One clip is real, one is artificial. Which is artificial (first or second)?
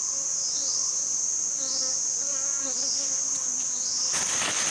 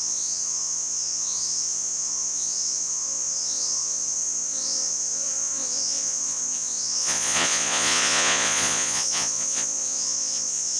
second